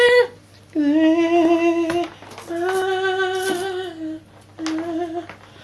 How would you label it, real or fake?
real